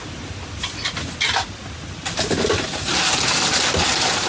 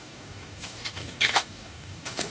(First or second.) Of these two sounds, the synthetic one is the second